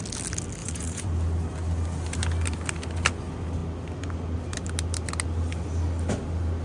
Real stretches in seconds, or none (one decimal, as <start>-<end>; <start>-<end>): 0.0-0.6; 1.1-6.6